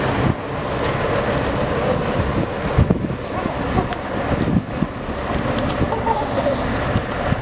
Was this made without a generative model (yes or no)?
yes